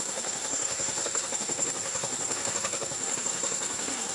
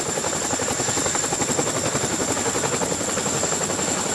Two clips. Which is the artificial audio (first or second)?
first